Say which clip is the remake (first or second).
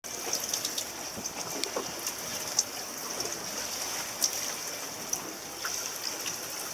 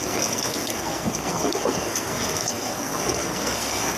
second